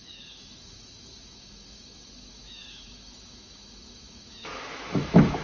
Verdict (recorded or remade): remade